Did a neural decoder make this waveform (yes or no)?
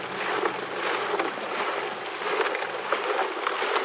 no